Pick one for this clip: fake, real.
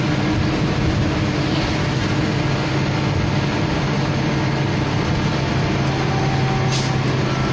real